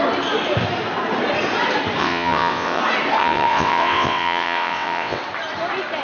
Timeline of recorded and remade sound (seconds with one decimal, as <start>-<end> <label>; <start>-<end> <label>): 0.0-2.0 recorded; 2.0-2.8 remade; 2.8-3.2 recorded; 3.2-5.2 remade; 5.2-6.0 recorded

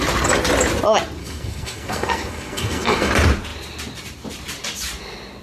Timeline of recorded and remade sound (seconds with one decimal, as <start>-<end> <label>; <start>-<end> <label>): 0.0-1.2 recorded; 1.2-3.1 remade; 3.1-5.4 recorded

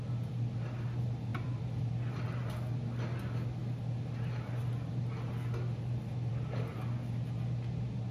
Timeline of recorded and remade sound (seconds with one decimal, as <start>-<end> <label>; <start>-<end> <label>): 0.0-1.3 recorded; 1.3-1.9 remade; 1.9-8.1 recorded

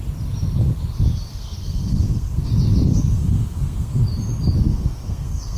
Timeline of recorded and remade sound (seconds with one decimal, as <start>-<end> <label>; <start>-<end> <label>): 0.0-1.3 recorded; 1.3-2.5 remade; 2.5-2.9 recorded; 2.9-4.0 remade; 4.0-4.7 recorded; 4.7-5.6 remade

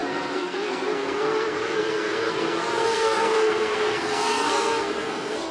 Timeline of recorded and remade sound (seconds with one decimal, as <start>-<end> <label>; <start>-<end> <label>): 0.0-5.5 remade